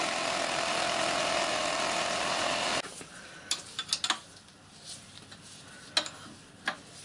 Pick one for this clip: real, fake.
real